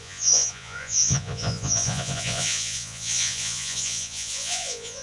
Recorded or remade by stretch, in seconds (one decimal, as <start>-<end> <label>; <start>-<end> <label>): 0.0-5.0 remade